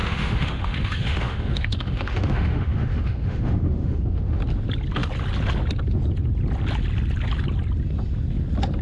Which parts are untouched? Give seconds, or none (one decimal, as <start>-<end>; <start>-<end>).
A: 4.4-8.8